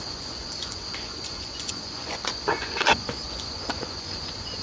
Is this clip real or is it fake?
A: fake